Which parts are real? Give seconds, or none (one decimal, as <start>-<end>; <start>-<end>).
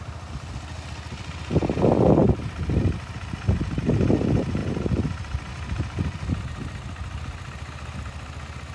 0.0-8.7